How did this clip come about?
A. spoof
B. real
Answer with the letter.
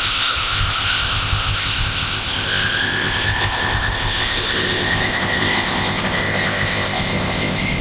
A